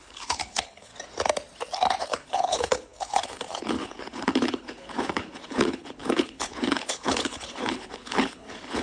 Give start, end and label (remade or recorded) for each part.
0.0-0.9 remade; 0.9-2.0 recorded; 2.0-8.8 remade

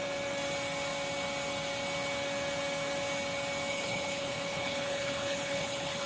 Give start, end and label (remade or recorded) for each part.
0.0-3.7 recorded; 3.7-6.1 remade

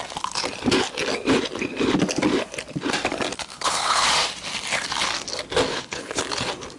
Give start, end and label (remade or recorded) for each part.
0.0-3.5 recorded; 3.5-4.1 remade; 4.1-5.7 recorded; 5.7-6.2 remade; 6.2-6.8 recorded

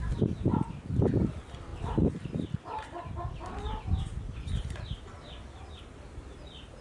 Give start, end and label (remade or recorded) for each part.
0.0-6.8 recorded

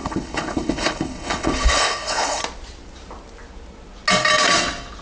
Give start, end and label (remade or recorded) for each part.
0.0-2.4 remade; 2.4-5.0 recorded

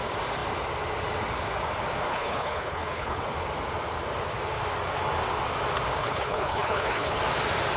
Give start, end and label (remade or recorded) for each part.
0.0-2.1 recorded; 2.1-3.2 remade; 3.2-6.0 recorded; 6.0-7.2 remade; 7.2-7.8 recorded